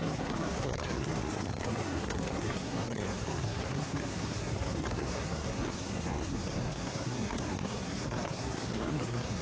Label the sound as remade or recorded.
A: remade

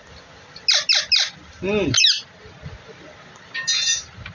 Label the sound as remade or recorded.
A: recorded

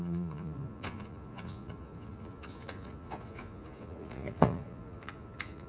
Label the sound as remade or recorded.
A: remade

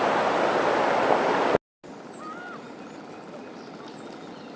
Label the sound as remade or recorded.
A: recorded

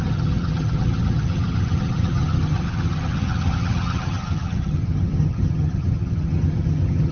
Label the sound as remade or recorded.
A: remade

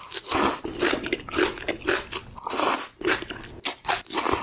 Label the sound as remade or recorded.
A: recorded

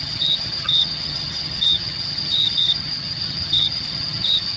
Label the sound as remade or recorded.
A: remade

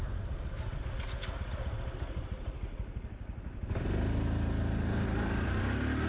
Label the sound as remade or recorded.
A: recorded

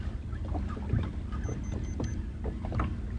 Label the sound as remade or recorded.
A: recorded